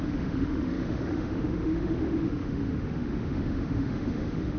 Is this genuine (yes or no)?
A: no